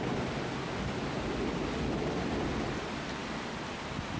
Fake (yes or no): no